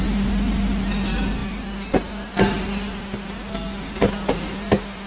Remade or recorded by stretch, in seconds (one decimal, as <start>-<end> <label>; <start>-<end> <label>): 0.0-5.1 recorded